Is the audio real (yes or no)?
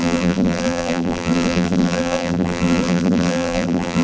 no